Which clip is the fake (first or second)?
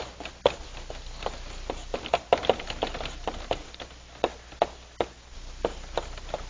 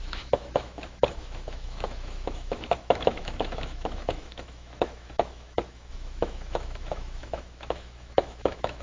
second